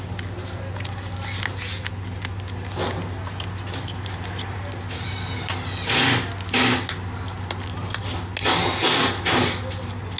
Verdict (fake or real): real